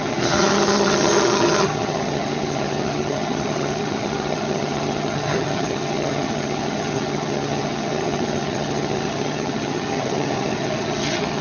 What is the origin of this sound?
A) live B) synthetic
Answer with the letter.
B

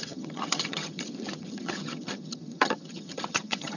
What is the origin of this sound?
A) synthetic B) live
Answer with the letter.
A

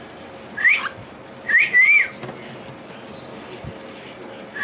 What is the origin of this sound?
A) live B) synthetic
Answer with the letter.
A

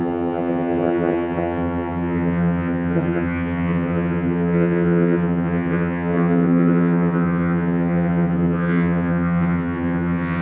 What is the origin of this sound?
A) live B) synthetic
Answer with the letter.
B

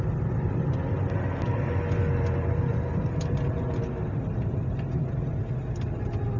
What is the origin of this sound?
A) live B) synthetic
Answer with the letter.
A